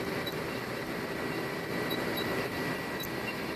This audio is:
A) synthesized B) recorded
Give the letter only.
B